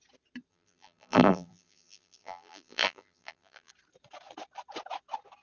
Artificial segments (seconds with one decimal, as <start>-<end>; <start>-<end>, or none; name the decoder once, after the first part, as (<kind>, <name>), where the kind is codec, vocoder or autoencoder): 0.5-3.7 (vocoder, BigVGAN v2)